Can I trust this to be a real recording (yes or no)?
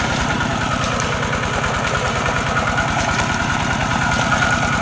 no